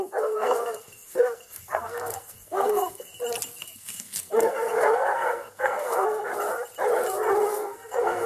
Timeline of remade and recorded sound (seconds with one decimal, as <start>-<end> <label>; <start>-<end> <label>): 0.0-3.1 remade; 3.1-3.6 recorded; 3.6-6.3 remade; 6.3-7.5 recorded; 7.5-8.3 remade